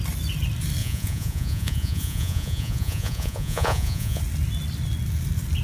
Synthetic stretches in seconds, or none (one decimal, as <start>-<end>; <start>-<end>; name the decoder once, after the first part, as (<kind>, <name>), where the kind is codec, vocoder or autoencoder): 0.8-4.2 (vocoder, Vocos)